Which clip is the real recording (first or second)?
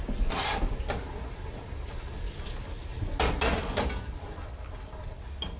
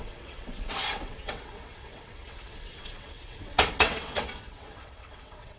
first